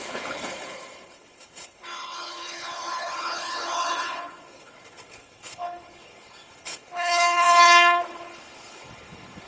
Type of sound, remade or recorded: remade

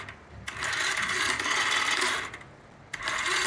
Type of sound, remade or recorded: recorded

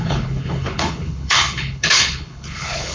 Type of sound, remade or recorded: remade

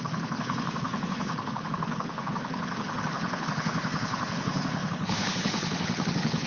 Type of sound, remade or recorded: remade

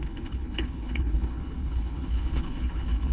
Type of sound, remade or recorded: remade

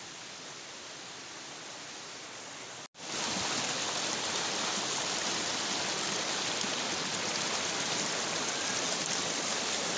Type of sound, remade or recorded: recorded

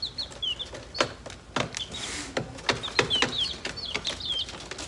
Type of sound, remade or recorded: recorded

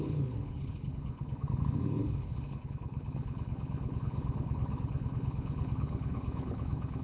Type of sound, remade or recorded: remade